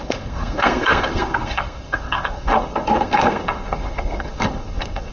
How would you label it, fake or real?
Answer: fake